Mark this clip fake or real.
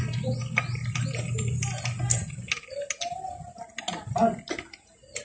real